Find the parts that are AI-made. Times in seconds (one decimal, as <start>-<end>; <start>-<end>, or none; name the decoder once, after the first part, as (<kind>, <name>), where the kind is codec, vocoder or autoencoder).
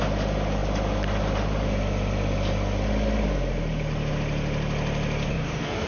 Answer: 5.3-5.9 (codec, DAC)